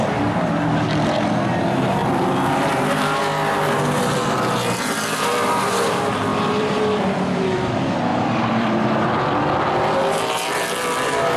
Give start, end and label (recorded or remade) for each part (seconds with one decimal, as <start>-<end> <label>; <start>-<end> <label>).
0.0-2.0 recorded; 2.0-3.2 remade; 3.2-6.3 recorded; 6.3-7.0 remade; 7.0-8.1 recorded; 8.1-9.7 remade; 9.7-11.4 recorded